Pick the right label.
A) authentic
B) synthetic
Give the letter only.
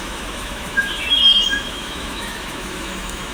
B